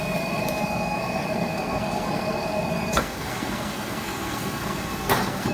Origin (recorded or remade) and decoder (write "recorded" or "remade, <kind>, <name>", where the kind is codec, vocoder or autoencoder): remade, codec, SNAC